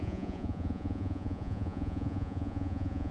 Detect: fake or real fake